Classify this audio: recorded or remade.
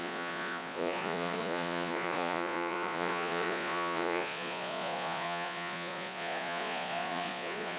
remade